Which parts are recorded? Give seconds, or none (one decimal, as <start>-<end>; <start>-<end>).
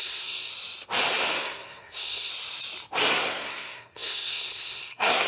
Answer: 0.5-1.4; 2.3-3.1